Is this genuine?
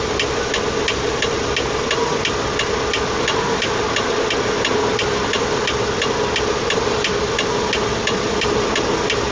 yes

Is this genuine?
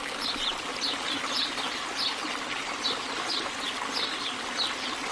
yes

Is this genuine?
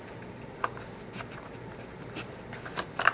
yes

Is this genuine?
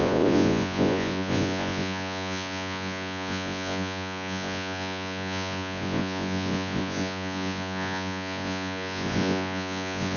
no